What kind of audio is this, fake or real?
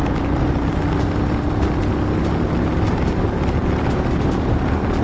real